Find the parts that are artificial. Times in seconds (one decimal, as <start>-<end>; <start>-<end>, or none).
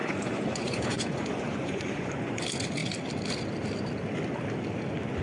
0.0-2.4